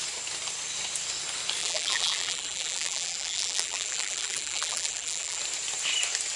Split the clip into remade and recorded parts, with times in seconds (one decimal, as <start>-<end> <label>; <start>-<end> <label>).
0.0-1.6 recorded; 1.6-5.4 remade; 5.4-6.4 recorded